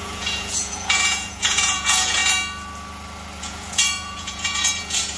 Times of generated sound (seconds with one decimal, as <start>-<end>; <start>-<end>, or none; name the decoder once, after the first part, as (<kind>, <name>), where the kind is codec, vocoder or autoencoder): 0.0-2.2 (vocoder, Vocos); 3.4-5.2